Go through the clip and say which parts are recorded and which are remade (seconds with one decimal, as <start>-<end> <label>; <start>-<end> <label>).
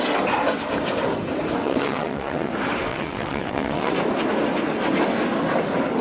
0.0-1.6 recorded; 1.6-2.5 remade; 2.5-2.9 recorded; 2.9-3.9 remade; 3.9-6.0 recorded